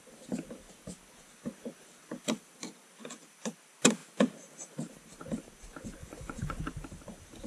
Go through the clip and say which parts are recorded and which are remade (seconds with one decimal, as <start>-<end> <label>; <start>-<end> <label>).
0.0-6.0 recorded; 6.0-6.6 remade; 6.6-7.5 recorded